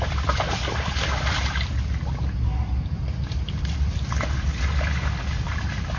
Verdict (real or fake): real